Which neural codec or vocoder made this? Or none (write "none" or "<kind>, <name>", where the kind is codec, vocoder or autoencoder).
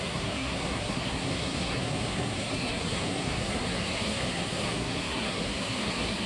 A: codec, SNAC